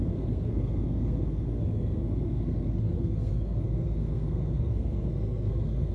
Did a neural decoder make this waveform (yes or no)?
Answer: yes